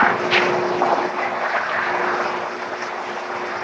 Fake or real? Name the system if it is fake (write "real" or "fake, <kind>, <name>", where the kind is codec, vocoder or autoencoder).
real